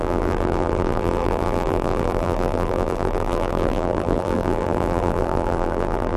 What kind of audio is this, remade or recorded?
remade